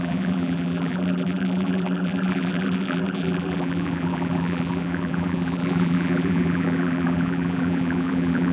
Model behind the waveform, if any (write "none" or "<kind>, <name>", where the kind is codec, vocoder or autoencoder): vocoder, BigVGAN v2